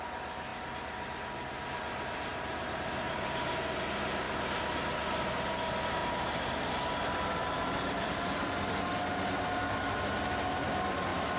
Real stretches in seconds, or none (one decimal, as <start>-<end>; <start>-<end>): 0.0-2.3; 3.5-6.0; 6.7-7.6; 8.5-11.4